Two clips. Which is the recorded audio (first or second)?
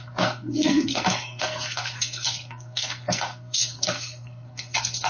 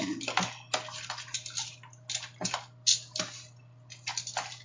second